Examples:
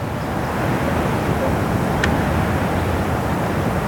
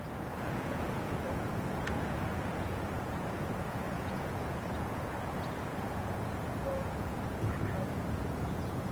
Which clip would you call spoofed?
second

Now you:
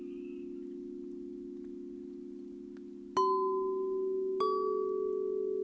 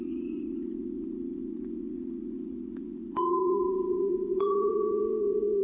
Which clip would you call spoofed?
second